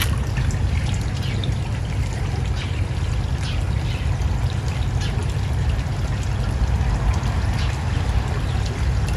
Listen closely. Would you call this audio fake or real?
real